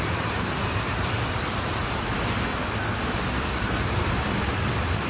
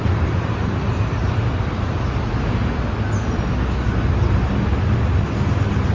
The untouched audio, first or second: second